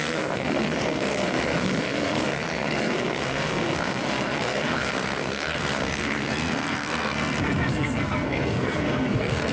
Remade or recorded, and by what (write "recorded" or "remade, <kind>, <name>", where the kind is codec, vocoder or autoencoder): remade, codec, SNAC